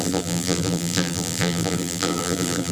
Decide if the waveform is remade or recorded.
remade